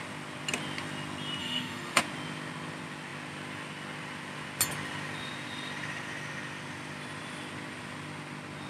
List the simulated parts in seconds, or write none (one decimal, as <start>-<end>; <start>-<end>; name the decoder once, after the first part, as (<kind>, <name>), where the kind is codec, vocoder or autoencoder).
1.4-2.0 (autoencoder, DAC-VAE)